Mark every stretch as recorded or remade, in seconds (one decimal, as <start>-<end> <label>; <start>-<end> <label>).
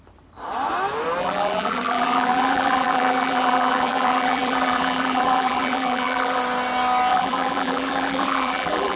0.0-1.2 recorded; 1.2-6.4 remade; 6.4-7.1 recorded; 7.1-9.0 remade